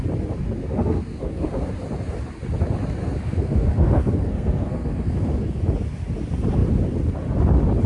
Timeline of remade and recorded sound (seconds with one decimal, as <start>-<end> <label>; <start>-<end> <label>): 0.0-0.6 recorded; 0.6-1.7 remade; 1.7-3.0 recorded; 3.0-5.6 remade; 5.6-7.9 recorded